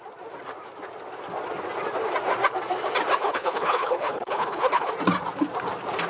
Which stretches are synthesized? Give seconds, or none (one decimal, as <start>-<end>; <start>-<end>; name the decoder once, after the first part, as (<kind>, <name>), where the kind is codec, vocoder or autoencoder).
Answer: 3.2-4.9 (codec, HILCodec)